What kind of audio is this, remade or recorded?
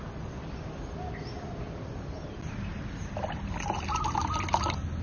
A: recorded